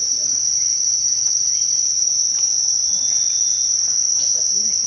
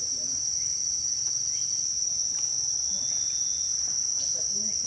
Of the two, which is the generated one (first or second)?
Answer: first